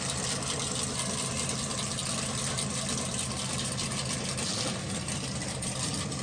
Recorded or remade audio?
recorded